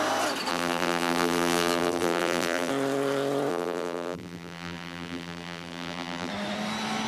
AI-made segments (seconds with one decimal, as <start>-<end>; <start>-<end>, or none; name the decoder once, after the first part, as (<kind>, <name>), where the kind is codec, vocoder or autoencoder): 0.5-2.7 (vocoder, BigVGAN v2); 3.5-6.3